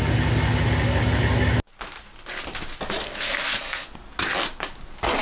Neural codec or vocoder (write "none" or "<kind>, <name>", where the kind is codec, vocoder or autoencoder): none